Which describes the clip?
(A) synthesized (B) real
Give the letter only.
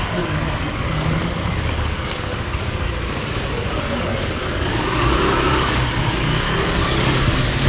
A